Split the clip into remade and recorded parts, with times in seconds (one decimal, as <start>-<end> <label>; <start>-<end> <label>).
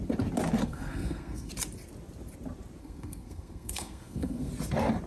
0.0-0.6 recorded; 0.6-1.5 remade; 1.5-2.8 recorded; 2.8-4.5 remade; 4.5-5.1 recorded